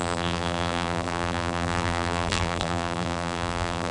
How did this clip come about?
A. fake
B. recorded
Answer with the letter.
A